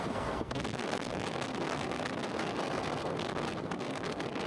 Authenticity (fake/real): fake